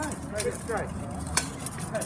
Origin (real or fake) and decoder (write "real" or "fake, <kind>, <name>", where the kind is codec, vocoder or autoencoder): real